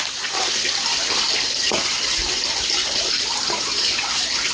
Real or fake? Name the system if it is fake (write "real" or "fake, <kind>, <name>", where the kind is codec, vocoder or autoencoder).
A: real